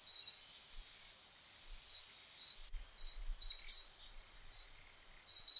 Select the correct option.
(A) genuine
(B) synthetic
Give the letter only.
A